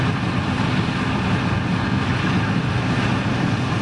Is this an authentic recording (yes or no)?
yes